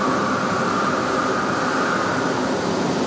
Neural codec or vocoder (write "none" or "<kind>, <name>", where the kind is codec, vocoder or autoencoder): none